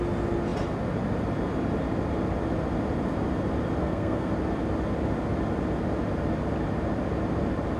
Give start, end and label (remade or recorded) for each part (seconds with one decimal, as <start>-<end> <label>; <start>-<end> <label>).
0.0-3.8 recorded; 3.8-4.3 remade; 4.3-7.8 recorded